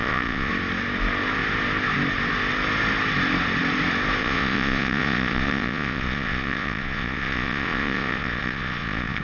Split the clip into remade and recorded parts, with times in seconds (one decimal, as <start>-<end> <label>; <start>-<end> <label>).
0.0-0.5 remade; 0.5-4.2 recorded; 4.2-9.2 remade